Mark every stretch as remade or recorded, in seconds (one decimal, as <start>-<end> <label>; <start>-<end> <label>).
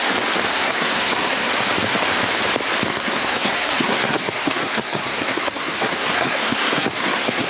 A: 0.0-0.5 recorded; 0.5-1.5 remade; 1.5-2.9 recorded; 2.9-7.5 remade